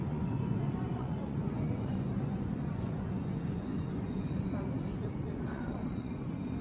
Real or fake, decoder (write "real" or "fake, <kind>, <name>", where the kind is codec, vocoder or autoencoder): fake, vocoder, Vocos